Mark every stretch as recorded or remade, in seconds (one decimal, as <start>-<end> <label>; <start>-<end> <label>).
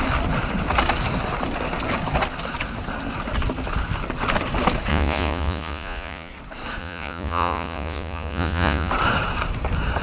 0.0-4.9 recorded; 4.9-6.3 remade; 6.3-6.8 recorded; 6.8-8.9 remade; 8.9-10.0 recorded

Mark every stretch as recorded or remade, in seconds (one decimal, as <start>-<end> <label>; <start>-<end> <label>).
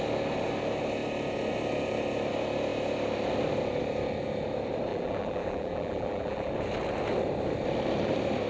0.0-4.9 recorded; 4.9-6.5 remade; 6.5-8.5 recorded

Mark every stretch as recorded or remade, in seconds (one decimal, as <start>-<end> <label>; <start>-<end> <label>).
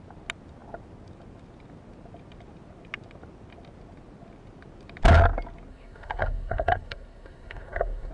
0.0-5.7 recorded; 5.7-8.1 remade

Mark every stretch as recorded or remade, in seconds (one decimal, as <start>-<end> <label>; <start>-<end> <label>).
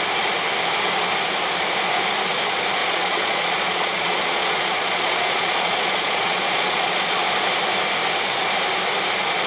0.0-2.8 recorded; 2.8-7.3 remade; 7.3-9.5 recorded